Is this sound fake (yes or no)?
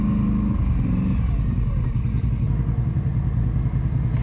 no